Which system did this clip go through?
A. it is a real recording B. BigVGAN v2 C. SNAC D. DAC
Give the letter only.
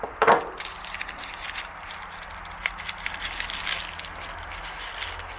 A